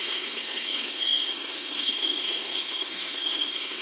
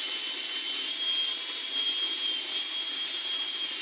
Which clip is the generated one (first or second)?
first